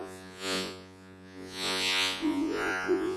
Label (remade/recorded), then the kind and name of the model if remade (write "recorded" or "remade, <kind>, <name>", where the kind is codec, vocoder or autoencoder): remade, vocoder, Vocos